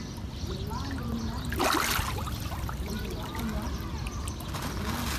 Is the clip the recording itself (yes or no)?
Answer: yes